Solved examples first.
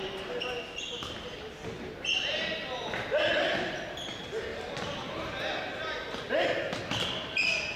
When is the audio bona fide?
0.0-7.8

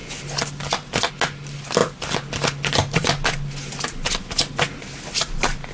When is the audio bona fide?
0.0-5.7

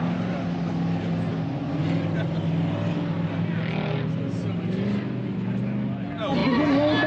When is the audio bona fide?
0.0-7.1

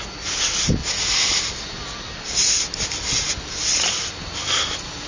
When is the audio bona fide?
0.0-5.1

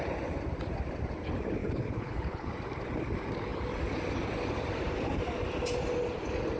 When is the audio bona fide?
0.0-1.6; 2.5-6.6

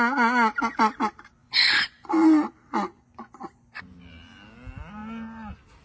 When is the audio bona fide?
0.0-1.4; 4.0-5.8